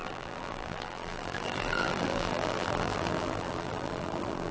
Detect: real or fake fake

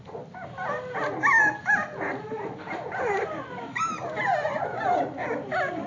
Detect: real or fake real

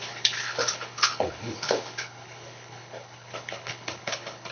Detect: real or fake fake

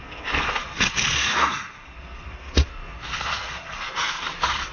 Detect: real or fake fake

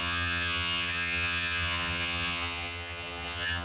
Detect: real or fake fake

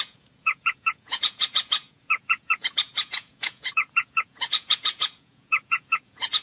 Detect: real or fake fake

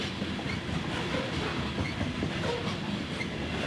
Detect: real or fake fake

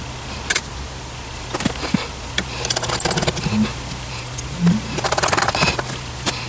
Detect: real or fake real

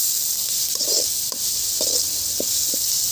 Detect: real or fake real